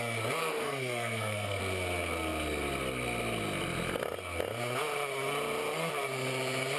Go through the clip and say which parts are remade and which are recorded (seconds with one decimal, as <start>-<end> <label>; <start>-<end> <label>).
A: 0.0-0.4 recorded; 0.4-1.6 remade; 1.6-6.8 recorded